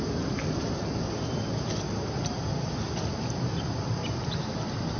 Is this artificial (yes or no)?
no